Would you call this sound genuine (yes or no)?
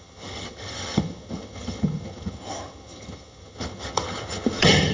no